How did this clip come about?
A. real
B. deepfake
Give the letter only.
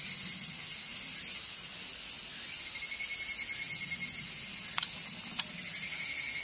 A